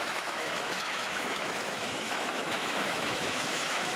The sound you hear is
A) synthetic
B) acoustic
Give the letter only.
A